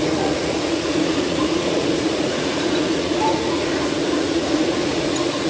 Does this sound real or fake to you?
fake